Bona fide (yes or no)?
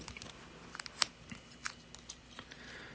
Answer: yes